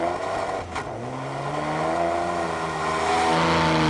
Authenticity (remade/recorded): recorded